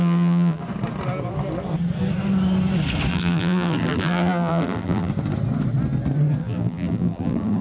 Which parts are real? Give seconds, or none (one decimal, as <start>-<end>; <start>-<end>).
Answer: 0.6-3.1; 5.1-6.4